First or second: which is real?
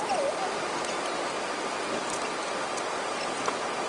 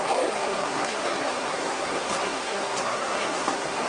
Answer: first